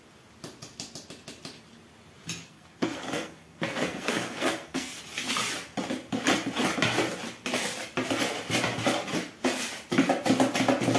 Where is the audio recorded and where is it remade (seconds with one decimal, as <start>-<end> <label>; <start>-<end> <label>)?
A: 0.0-2.4 recorded; 2.4-5.0 remade; 5.0-11.0 recorded